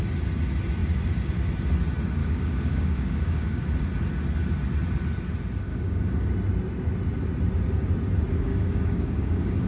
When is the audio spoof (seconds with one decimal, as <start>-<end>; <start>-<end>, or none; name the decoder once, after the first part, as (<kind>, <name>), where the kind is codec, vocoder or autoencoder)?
2.2-3.7 (codec, DAC); 5.7-6.3; 8.5-9.7